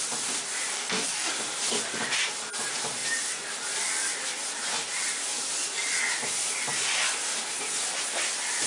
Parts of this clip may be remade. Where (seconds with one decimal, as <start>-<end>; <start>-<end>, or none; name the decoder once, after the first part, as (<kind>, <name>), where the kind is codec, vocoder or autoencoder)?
0.7-1.3 (codec, DAC)